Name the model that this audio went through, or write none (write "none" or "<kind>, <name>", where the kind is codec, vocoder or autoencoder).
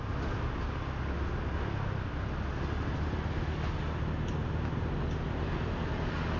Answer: none